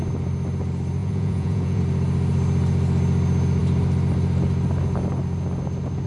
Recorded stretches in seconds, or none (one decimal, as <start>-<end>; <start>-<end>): 0.0-1.0; 1.8-6.1